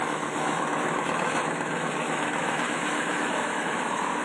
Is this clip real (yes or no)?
no